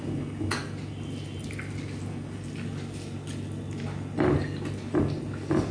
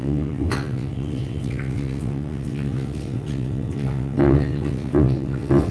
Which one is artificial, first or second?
second